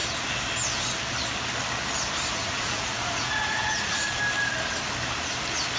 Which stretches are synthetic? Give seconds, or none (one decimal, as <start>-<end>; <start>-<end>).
2.3-4.2